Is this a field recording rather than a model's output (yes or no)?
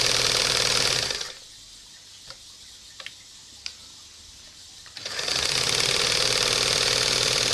yes